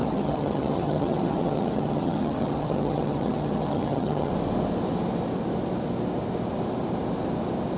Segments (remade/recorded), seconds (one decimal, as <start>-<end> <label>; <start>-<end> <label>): 0.0-4.3 remade; 4.3-7.8 recorded